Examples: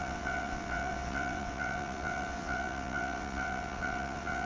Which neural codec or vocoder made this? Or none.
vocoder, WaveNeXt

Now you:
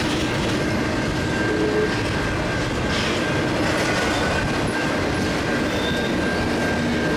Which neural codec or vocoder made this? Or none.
none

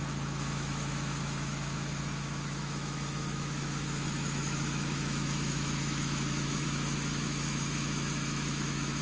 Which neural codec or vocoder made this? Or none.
autoencoder, DAC-VAE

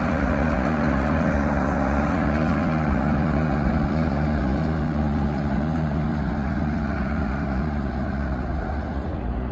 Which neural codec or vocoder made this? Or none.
vocoder, Vocos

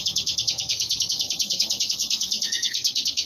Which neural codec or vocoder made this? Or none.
codec, SNAC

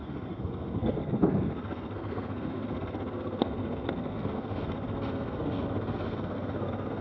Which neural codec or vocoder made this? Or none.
codec, SNAC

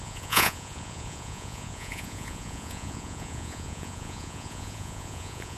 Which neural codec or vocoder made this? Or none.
vocoder, Vocos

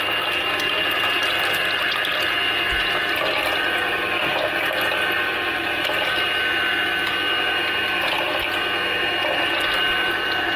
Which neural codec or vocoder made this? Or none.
none